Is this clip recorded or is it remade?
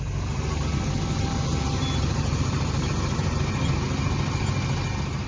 recorded